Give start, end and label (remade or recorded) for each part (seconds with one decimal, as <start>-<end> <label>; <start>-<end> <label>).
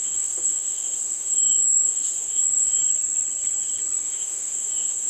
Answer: 0.0-2.8 remade; 2.8-4.0 recorded; 4.0-5.1 remade